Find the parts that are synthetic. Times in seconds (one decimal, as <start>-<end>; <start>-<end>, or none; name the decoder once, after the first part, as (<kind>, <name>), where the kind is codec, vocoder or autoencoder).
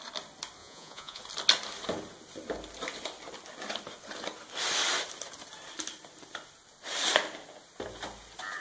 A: 0.6-1.2 (vocoder, Vocos)